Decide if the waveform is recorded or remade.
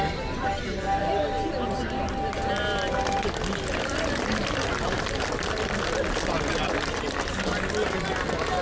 recorded